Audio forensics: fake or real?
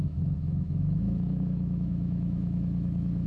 fake